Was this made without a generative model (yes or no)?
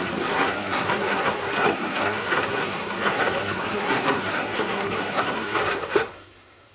no